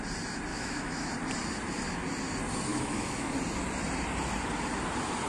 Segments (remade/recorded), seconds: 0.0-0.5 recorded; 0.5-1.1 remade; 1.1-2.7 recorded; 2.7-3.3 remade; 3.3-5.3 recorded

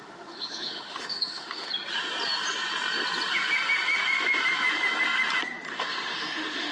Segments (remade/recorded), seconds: 0.0-1.7 remade; 1.7-5.7 recorded; 5.7-6.7 remade

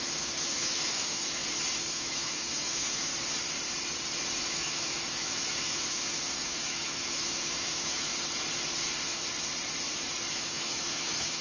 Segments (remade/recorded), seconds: 0.0-1.4 remade; 1.4-1.9 recorded; 1.9-3.1 remade; 3.1-4.4 recorded; 4.4-8.1 remade; 8.1-10.3 recorded; 10.3-11.4 remade